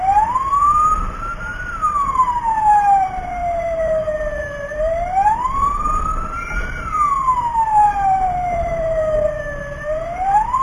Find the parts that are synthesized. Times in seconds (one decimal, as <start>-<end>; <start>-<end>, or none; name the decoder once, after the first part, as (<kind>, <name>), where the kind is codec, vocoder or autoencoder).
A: 0.0-10.6 (vocoder, BigVGAN v2)